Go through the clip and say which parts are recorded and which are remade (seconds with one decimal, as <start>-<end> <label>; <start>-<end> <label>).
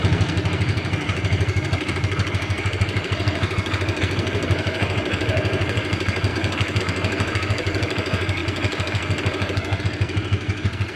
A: 0.0-11.0 remade